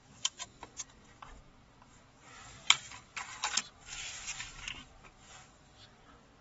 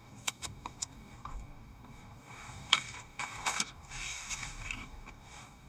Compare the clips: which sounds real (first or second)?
first